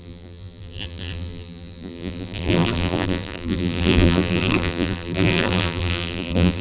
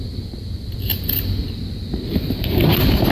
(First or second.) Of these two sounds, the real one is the second